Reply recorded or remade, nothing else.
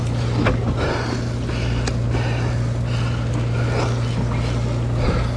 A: recorded